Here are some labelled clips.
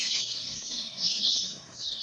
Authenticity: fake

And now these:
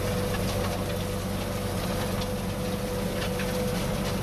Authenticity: real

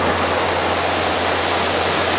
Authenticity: real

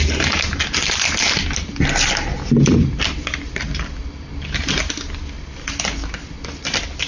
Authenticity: real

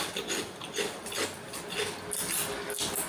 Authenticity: real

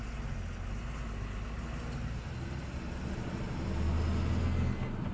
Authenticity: real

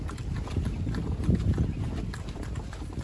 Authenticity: real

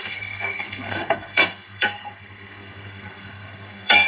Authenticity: fake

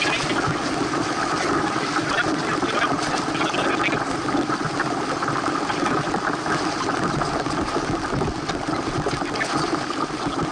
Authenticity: real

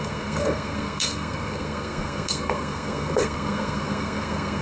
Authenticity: fake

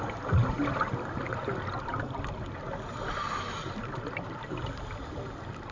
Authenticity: real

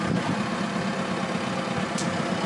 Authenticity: real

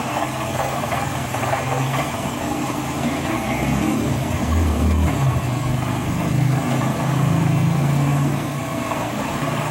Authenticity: fake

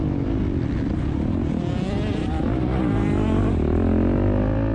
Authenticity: real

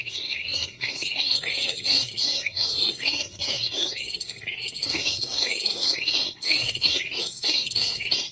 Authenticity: fake